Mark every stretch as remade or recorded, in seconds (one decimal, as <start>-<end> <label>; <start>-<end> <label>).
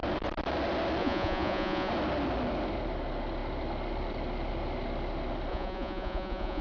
0.0-1.0 recorded; 1.0-1.9 remade; 1.9-5.5 recorded; 5.5-6.6 remade